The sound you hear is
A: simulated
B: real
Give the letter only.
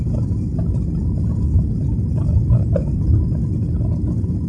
B